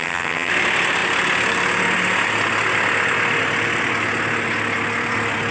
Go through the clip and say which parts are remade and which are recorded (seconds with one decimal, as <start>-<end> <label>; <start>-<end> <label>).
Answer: 0.0-0.5 remade; 0.5-5.5 recorded

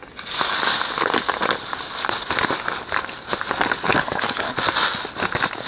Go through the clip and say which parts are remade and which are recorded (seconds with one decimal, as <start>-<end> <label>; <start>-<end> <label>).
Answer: 0.0-3.9 recorded; 3.9-4.5 remade; 4.5-5.7 recorded

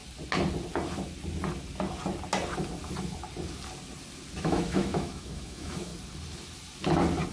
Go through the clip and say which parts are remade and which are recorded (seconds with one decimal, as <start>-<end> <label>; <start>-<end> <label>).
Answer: 0.0-4.4 recorded; 4.4-5.9 remade; 5.9-7.3 recorded

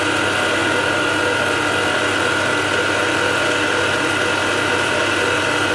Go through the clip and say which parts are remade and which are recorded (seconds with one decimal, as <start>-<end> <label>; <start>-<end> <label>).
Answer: 0.0-5.7 recorded

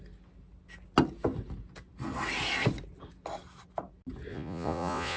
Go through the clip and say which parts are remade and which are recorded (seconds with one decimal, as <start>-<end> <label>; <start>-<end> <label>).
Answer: 0.0-4.3 recorded; 4.3-5.2 remade

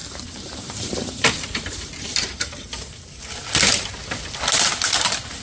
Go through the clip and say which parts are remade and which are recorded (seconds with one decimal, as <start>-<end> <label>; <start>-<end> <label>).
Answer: 0.0-3.2 remade; 3.2-5.4 recorded